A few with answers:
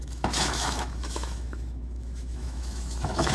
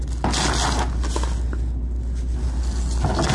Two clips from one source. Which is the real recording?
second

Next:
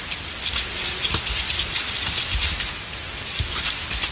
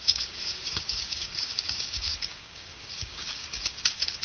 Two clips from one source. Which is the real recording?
first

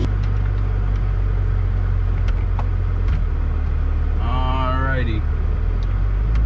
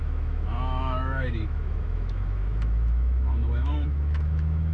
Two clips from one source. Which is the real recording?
first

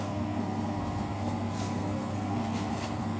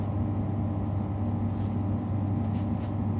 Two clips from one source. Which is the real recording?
second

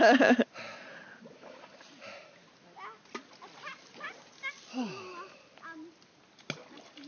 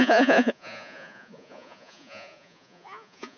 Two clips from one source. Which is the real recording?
first